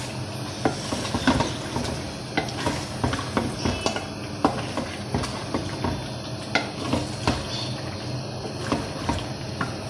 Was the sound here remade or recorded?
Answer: recorded